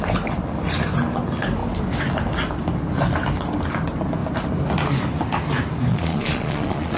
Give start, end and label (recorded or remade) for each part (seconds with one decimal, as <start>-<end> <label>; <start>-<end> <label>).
0.0-5.9 recorded; 5.9-7.0 remade